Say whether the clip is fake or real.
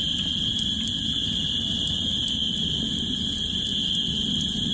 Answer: real